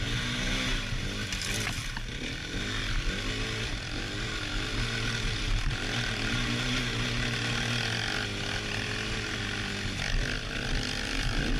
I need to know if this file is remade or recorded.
recorded